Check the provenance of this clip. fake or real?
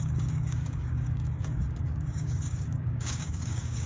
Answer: fake